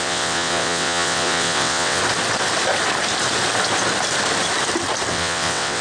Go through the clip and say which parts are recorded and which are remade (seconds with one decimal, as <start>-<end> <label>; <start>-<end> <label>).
0.0-2.0 remade; 2.0-5.1 recorded; 5.1-5.8 remade

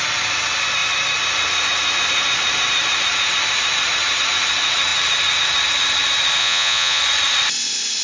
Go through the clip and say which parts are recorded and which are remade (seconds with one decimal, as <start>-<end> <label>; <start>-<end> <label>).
0.0-6.4 recorded; 6.4-7.0 remade; 7.0-8.0 recorded

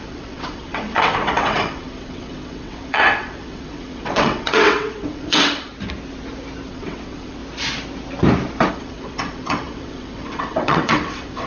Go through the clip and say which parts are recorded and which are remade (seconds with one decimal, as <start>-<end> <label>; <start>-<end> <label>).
0.0-5.7 remade; 5.7-6.7 recorded; 6.7-7.4 remade; 7.4-8.7 recorded; 8.7-11.5 remade

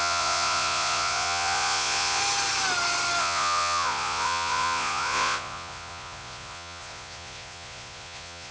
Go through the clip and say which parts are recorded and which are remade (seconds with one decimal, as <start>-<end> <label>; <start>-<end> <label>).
0.0-2.2 remade; 2.2-3.2 recorded; 3.2-8.5 remade

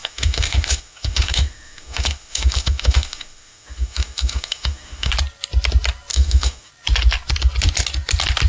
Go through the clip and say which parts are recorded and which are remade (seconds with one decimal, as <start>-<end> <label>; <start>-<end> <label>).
0.0-5.1 remade; 5.1-6.1 recorded; 6.1-6.7 remade; 6.7-8.5 recorded

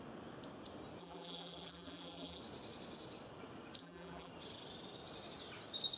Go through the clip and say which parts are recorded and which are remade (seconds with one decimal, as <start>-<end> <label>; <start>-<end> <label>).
0.0-1.0 recorded; 1.0-2.4 remade; 2.4-3.8 recorded; 3.8-4.3 remade; 4.3-6.0 recorded

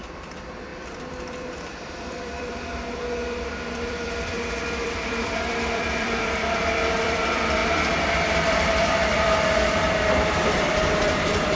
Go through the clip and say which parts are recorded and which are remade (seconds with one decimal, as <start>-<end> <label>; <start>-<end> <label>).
0.0-7.6 remade; 7.6-8.3 recorded; 8.3-11.6 remade

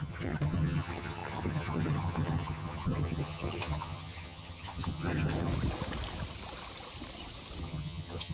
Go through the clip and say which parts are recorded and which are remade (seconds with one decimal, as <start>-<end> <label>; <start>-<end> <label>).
0.0-5.5 remade; 5.5-7.6 recorded; 7.6-8.3 remade